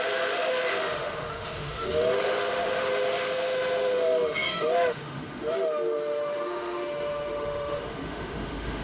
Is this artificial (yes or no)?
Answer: yes